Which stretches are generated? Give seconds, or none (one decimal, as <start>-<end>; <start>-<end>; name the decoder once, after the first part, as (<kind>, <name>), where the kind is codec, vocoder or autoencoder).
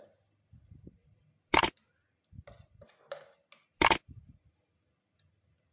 none